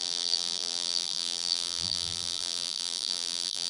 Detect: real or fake fake